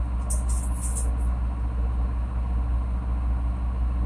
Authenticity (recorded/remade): recorded